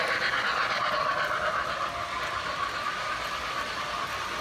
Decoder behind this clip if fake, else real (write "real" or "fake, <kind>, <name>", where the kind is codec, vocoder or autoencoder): real